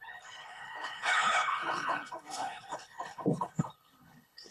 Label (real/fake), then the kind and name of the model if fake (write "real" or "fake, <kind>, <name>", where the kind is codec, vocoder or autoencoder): fake, codec, HILCodec